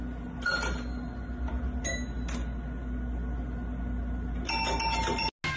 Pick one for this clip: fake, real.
real